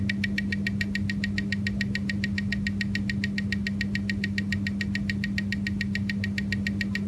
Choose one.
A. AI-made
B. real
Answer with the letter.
B